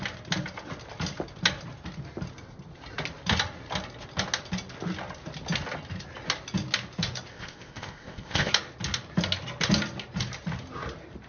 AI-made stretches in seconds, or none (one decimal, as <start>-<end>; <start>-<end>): 7.3-8.5